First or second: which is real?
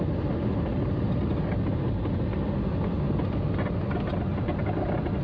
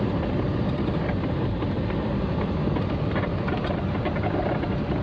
first